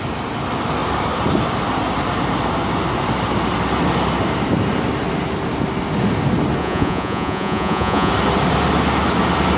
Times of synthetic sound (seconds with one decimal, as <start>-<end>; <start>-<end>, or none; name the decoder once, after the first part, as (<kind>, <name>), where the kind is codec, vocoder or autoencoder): 6.6-8.1 (vocoder, Vocos)